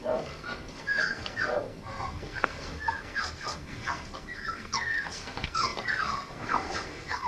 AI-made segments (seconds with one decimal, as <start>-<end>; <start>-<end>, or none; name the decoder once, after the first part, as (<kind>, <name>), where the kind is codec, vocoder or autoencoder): 0.0-7.3 (codec, SNAC)